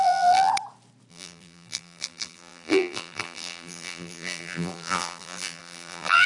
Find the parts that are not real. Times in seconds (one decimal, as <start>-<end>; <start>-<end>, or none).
0.0-0.5; 1.1-6.3